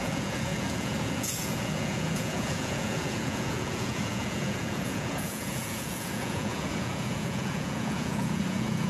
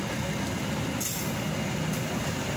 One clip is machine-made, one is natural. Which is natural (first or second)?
second